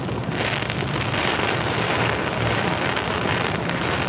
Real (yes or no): no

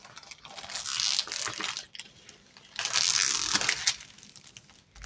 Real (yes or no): yes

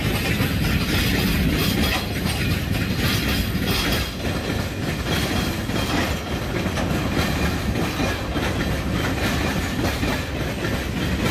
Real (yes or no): yes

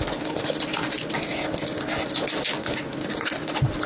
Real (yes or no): yes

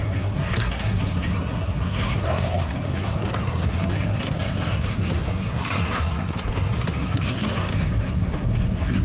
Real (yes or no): no